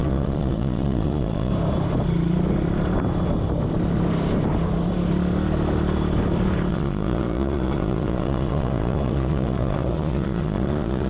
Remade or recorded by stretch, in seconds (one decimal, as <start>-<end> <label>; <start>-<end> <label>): 0.0-1.5 remade; 1.5-6.7 recorded; 6.7-11.1 remade